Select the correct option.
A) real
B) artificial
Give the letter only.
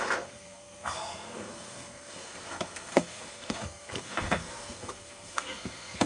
B